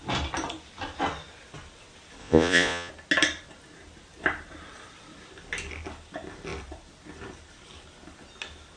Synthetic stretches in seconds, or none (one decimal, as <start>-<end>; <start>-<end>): 2.2-2.9